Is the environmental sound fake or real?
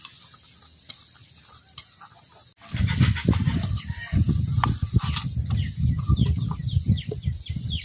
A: real